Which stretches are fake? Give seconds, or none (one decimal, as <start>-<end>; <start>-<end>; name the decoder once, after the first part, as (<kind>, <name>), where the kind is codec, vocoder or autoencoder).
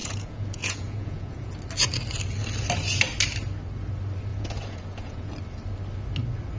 0.0-1.5 (vocoder, Vocos); 4.3-5.3